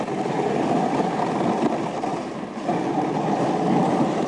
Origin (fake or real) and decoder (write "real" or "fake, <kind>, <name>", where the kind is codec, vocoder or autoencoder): real